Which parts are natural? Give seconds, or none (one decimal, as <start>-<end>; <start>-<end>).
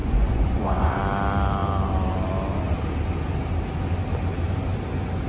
1.0-5.3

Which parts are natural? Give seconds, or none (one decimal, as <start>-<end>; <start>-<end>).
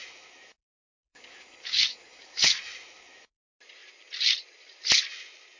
3.4-5.6